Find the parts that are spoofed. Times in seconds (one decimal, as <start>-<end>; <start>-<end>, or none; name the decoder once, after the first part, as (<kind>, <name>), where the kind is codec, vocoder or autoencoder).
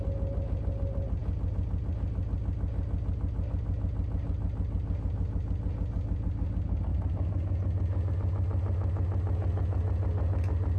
none